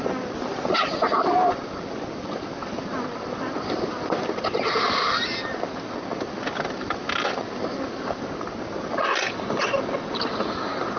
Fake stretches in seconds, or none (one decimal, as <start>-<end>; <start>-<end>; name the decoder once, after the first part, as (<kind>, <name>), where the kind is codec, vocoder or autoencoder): none